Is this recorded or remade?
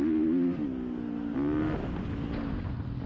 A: recorded